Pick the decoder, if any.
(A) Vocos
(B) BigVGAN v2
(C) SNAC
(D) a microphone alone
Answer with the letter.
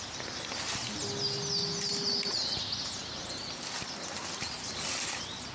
D